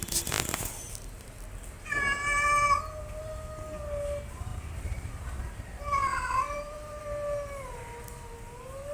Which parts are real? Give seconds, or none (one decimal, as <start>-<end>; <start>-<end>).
0.0-4.5; 5.1-6.1; 7.0-8.9